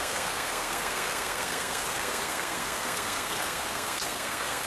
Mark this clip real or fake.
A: fake